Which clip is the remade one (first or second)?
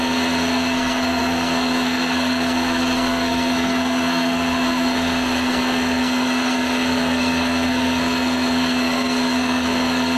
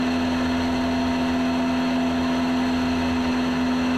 first